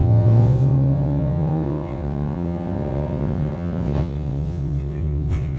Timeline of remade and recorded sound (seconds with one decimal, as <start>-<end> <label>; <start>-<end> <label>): 0.0-5.6 remade